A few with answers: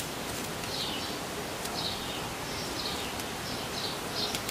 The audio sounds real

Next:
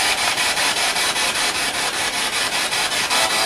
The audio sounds fake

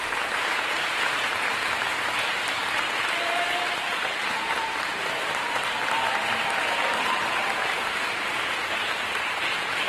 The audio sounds fake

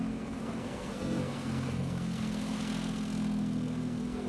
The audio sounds fake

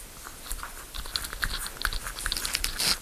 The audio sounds real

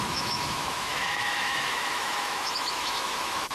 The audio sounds fake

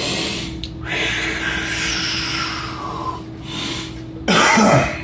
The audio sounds real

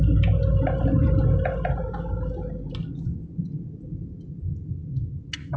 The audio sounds real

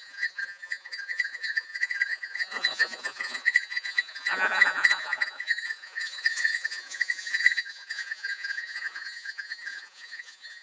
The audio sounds fake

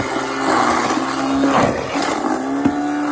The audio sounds real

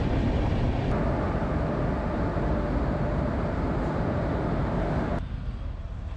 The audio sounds real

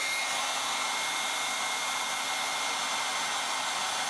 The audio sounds real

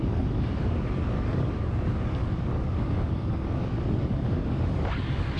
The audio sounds fake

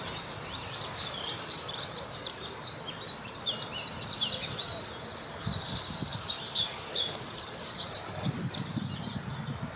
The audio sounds fake